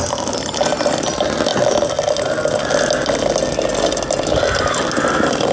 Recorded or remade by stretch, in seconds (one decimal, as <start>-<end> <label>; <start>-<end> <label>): 0.0-5.5 recorded

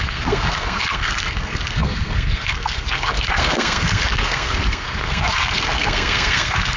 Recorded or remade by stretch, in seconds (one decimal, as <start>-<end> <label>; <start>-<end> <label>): 0.0-6.8 remade

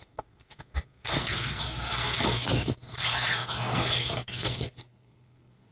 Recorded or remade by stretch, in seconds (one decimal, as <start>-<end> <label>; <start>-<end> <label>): 0.0-5.7 remade

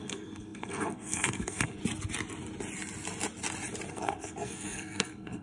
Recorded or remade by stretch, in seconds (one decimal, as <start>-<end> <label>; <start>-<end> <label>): 0.0-1.8 remade; 1.8-3.9 recorded; 3.9-5.4 remade